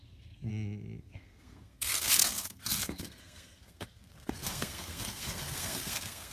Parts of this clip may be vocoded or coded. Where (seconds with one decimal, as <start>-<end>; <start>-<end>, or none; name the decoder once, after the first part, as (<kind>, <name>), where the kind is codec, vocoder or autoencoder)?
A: 0.0-0.5 (codec, SNAC); 1.0-6.3